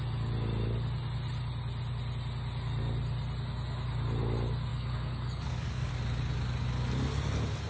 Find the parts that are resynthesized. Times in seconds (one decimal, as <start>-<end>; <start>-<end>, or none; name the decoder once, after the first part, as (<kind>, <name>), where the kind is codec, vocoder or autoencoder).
4.7-5.9 (codec, DAC)